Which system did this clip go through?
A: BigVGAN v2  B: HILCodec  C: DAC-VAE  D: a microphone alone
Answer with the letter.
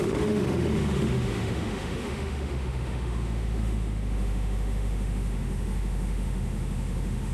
C